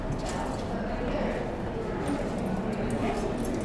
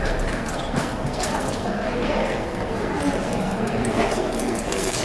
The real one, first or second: first